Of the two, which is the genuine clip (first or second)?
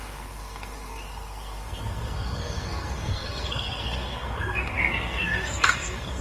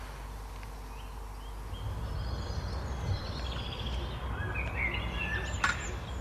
second